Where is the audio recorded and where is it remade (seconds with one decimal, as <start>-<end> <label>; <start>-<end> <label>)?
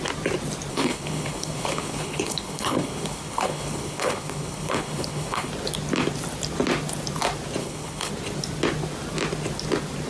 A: 0.0-0.7 recorded; 0.7-5.5 remade; 5.5-7.6 recorded; 7.6-8.1 remade; 8.1-10.1 recorded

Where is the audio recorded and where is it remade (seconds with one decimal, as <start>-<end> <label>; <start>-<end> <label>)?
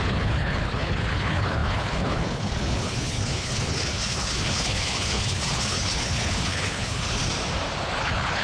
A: 0.0-7.2 remade; 7.2-8.0 recorded; 8.0-8.4 remade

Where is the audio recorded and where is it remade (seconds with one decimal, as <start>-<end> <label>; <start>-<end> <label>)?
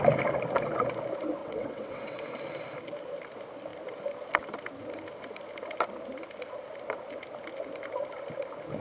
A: 0.0-1.4 recorded; 1.4-2.2 remade; 2.2-8.8 recorded